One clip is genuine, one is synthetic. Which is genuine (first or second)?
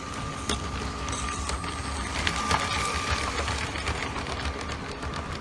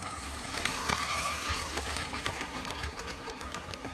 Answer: first